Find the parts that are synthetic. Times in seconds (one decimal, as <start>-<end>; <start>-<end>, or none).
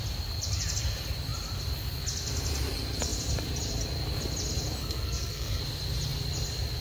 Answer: 4.8-5.6